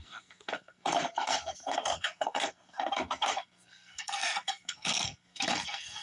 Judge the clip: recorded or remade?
remade